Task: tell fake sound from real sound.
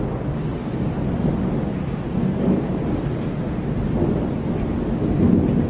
real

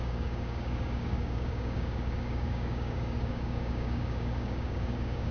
fake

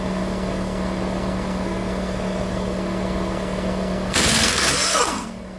fake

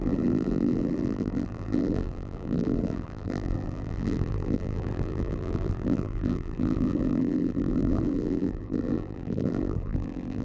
fake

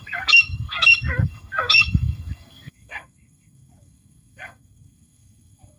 fake